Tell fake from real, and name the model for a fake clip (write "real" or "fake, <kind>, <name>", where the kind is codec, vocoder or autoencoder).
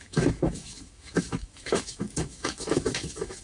fake, autoencoder, DAC-VAE